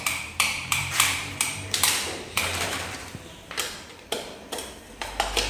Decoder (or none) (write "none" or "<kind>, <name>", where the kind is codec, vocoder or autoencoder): vocoder, BigVGAN v2